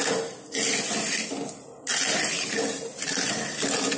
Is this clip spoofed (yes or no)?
no